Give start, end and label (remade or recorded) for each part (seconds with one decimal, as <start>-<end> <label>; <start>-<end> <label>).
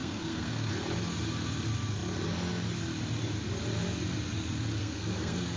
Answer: 0.0-0.7 remade; 0.7-4.8 recorded; 4.8-5.6 remade